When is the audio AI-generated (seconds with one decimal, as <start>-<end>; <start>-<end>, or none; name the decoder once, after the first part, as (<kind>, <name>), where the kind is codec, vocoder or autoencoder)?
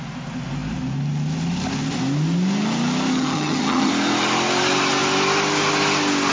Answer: 3.1-3.9 (vocoder, HiFi-GAN)